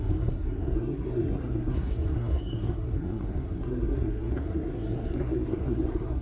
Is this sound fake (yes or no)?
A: yes